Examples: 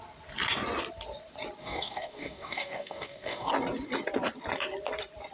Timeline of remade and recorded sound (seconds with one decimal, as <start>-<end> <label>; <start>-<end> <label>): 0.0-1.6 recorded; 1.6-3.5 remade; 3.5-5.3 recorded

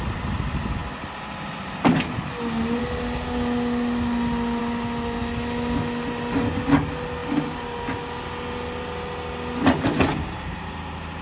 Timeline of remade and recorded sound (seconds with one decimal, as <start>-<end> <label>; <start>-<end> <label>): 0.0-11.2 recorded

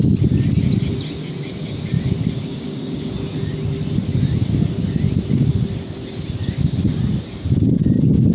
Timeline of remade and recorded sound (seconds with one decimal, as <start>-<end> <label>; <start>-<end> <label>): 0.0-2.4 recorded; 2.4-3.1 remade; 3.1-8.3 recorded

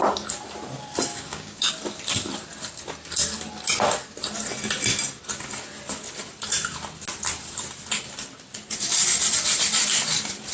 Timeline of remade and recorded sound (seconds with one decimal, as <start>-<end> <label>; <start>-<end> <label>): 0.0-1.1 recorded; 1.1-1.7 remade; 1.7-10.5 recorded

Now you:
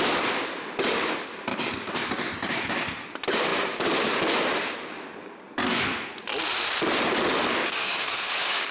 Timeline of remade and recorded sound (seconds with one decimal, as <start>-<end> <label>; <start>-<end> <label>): 0.0-1.5 recorded; 1.5-2.8 remade; 2.8-7.6 recorded; 7.6-8.7 remade

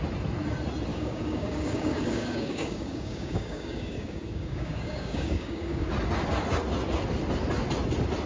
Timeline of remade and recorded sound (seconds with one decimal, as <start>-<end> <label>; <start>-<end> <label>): 0.0-0.9 recorded; 0.9-5.9 remade; 5.9-8.3 recorded

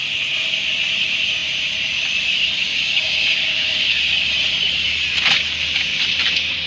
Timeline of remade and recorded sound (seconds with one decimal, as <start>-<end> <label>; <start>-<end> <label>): 0.0-2.7 recorded; 2.7-4.3 remade; 4.3-6.7 recorded